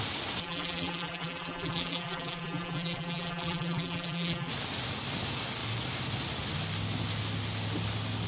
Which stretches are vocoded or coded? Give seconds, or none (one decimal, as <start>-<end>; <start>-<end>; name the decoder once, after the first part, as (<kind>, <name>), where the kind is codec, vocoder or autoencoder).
0.4-4.5 (vocoder, BigVGAN v2)